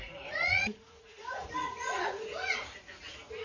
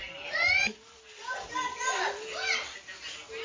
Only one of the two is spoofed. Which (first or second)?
first